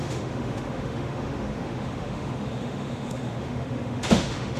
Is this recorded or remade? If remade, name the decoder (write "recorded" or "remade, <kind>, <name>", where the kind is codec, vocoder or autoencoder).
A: remade, autoencoder, DAC-VAE